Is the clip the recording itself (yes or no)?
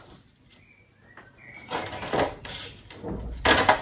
yes